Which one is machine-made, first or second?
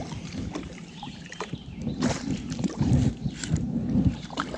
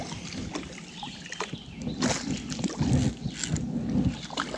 first